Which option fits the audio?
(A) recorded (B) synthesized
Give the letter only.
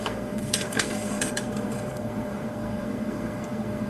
B